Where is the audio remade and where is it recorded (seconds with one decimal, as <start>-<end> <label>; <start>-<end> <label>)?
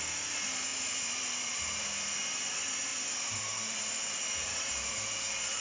0.0-5.6 remade